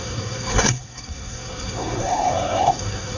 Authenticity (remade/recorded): remade